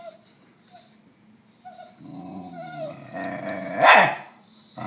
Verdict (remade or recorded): recorded